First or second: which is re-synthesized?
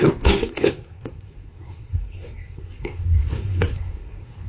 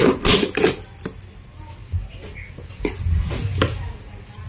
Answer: first